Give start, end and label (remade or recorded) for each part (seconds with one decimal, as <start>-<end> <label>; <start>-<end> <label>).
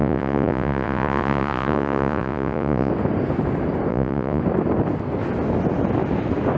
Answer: 0.0-2.9 remade; 2.9-3.9 recorded; 3.9-4.4 remade; 4.4-6.6 recorded